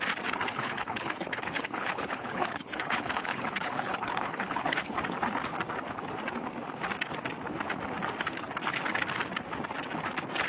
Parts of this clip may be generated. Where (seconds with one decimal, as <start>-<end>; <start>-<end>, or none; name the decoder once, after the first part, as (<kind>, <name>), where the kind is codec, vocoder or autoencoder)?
0.4-4.9 (codec, HILCodec)